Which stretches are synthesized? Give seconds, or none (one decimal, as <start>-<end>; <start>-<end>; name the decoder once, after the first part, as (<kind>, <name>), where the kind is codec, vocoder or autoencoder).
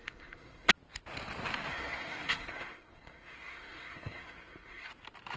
0.0-0.7 (codec, SNAC); 1.7-4.9